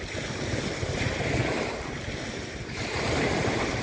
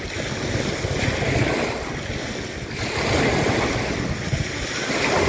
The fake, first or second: first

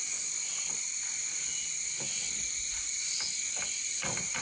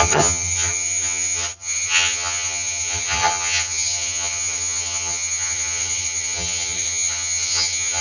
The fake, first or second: second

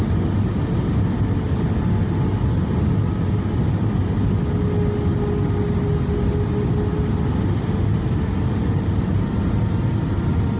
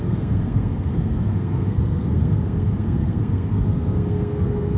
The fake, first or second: second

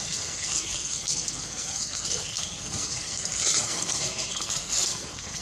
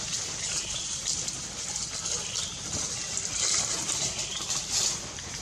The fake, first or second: first